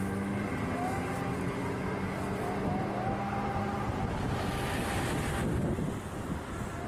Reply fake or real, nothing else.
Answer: real